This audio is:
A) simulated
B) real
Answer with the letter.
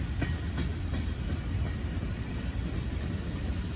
B